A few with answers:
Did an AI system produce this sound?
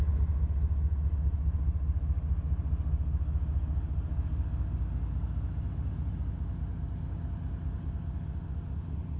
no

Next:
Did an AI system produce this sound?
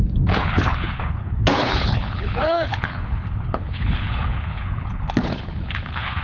yes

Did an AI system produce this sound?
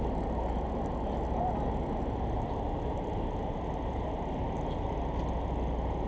no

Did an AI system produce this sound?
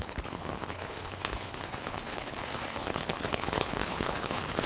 yes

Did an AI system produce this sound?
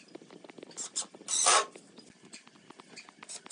no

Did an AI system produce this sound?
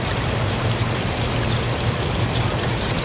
no